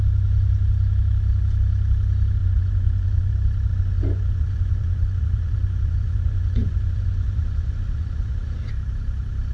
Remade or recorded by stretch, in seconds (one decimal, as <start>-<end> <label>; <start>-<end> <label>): 0.0-2.4 recorded; 2.4-3.3 remade; 3.3-3.7 recorded; 3.7-8.7 remade; 8.7-9.5 recorded